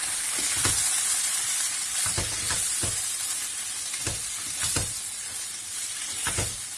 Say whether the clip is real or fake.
real